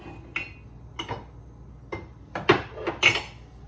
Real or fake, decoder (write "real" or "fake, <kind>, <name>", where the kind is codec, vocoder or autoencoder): real